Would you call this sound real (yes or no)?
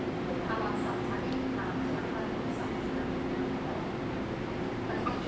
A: yes